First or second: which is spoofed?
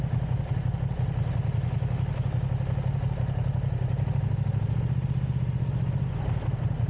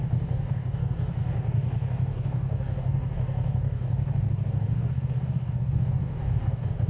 second